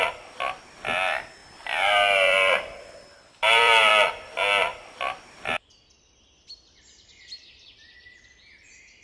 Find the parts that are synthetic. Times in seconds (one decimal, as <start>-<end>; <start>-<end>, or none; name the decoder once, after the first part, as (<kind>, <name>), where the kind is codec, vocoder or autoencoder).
1.4-3.9 (vocoder, BigVGAN v2); 4.7-6.5